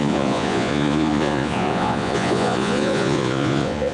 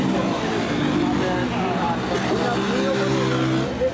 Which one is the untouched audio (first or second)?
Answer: second